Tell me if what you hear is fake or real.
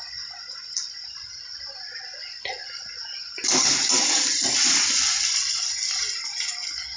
real